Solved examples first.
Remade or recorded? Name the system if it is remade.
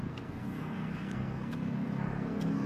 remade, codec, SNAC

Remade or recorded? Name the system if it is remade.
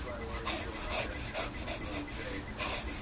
recorded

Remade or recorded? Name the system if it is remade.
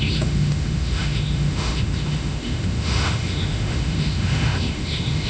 remade, autoencoder, DAC-VAE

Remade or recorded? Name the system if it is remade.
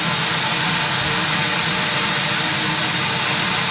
recorded